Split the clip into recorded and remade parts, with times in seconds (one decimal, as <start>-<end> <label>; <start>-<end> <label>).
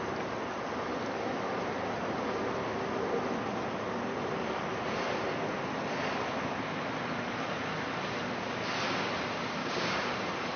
0.0-9.6 recorded; 9.6-10.1 remade; 10.1-10.6 recorded